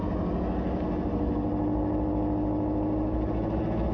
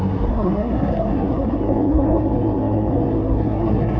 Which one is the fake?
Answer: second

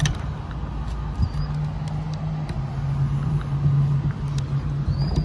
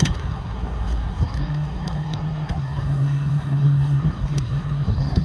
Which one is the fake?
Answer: second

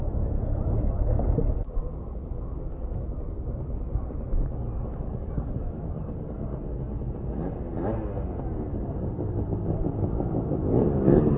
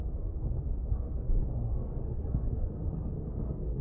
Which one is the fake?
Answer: second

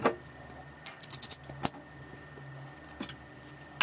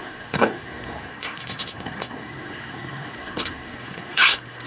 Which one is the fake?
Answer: second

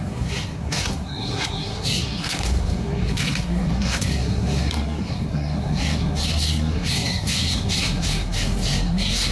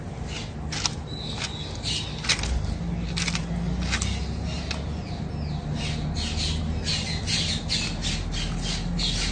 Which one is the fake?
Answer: first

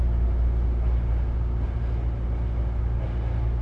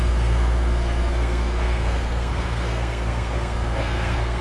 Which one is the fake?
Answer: second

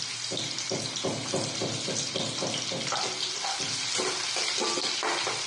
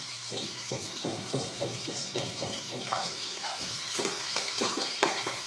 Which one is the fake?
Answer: second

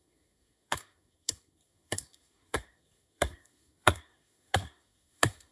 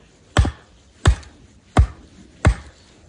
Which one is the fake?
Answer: first